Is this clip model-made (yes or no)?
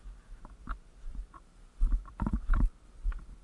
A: no